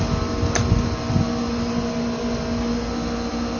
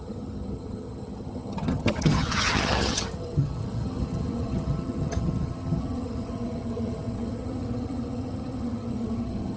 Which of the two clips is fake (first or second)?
second